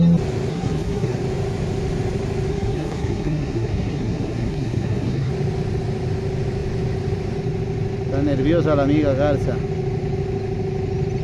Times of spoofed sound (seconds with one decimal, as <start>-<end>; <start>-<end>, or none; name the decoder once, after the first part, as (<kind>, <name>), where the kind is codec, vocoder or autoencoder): 0.5-1.2 (codec, SNAC); 2.5-5.3